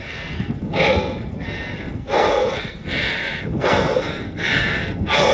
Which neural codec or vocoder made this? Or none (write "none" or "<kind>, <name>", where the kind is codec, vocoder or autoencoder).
codec, SNAC